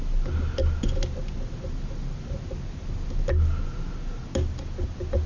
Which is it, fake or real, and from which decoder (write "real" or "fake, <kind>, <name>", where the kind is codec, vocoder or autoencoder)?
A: real